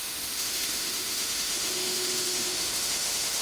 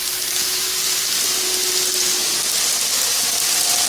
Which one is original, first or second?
second